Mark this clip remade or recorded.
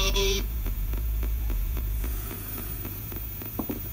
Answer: remade